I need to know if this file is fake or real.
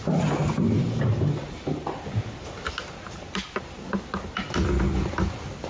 real